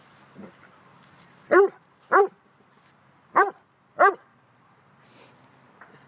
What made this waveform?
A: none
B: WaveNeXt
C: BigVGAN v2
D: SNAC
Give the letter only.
A